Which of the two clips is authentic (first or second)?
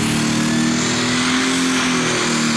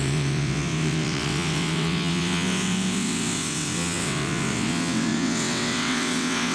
first